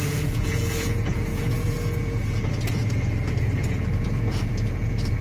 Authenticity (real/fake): fake